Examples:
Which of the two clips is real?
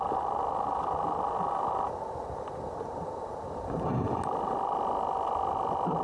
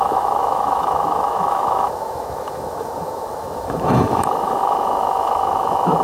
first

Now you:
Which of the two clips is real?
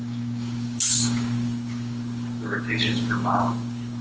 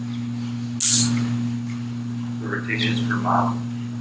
second